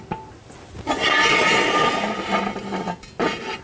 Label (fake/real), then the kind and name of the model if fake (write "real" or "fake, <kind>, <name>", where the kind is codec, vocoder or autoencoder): real